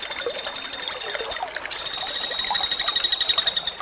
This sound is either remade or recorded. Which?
recorded